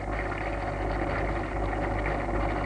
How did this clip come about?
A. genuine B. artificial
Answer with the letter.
A